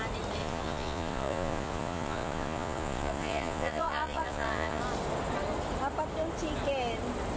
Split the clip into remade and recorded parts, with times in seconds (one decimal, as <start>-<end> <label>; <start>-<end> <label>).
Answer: 0.0-0.4 recorded; 0.4-4.8 remade; 4.8-7.4 recorded